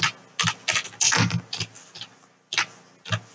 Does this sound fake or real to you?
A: real